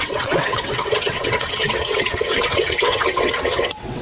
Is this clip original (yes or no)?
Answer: no